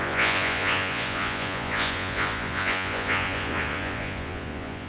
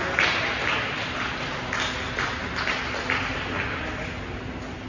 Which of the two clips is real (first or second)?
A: second